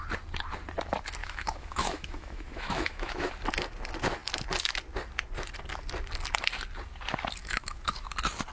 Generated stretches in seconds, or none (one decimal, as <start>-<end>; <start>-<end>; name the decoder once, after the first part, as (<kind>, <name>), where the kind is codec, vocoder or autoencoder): 1.2-3.3 (autoencoder, DAC-VAE); 7.4-7.9